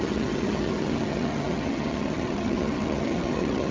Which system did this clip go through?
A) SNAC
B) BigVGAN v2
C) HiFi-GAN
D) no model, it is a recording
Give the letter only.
C